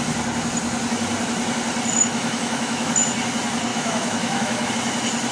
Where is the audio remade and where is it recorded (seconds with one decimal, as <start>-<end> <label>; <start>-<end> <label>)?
0.0-2.1 recorded; 2.1-2.9 remade; 2.9-3.7 recorded; 3.7-4.7 remade; 4.7-5.3 recorded